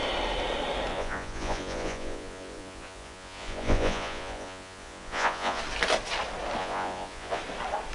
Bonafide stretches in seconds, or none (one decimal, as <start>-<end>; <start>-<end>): 0.0-0.9; 5.6-6.6; 7.4-7.9